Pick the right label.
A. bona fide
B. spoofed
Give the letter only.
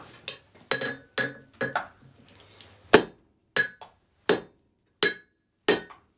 A